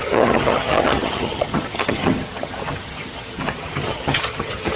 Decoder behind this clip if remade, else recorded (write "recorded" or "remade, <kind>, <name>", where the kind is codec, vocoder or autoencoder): remade, vocoder, HiFi-GAN